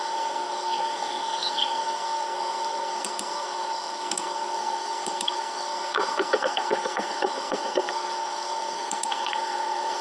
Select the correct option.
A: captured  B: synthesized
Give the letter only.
B